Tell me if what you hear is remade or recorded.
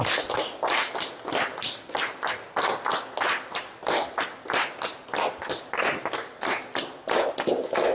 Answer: recorded